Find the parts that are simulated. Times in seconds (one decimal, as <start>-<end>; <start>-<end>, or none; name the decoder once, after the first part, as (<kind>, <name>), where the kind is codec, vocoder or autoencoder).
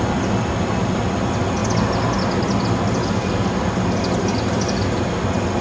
none